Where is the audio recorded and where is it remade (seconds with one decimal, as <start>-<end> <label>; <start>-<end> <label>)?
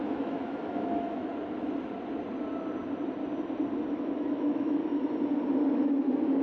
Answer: 0.0-1.3 remade; 1.3-3.9 recorded; 3.9-4.8 remade; 4.8-5.7 recorded; 5.7-6.4 remade